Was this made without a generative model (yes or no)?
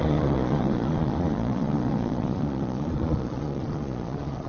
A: no